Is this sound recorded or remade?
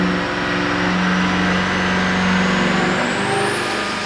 recorded